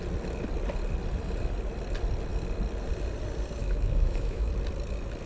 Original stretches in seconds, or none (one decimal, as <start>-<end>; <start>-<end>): 0.0-3.6; 4.5-5.3